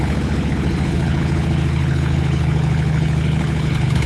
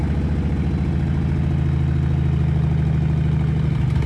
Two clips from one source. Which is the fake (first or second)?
first